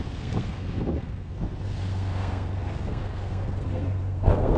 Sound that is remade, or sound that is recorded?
remade